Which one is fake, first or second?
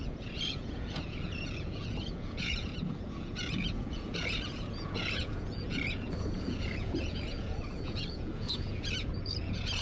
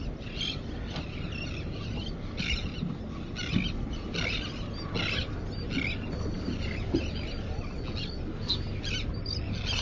first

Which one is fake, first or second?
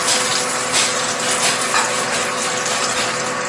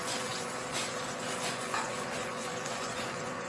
second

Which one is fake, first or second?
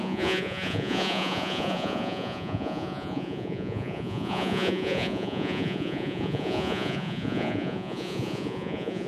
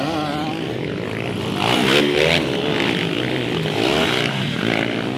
first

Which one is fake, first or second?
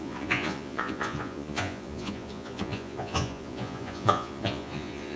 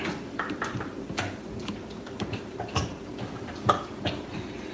first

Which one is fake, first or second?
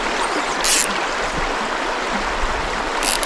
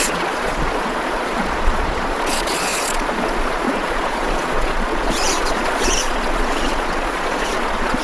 second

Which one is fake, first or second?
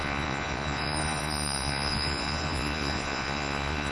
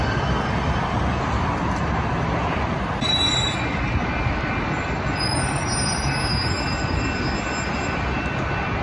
first